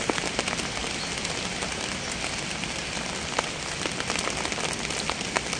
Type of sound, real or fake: real